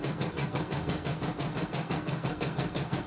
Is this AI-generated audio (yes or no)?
yes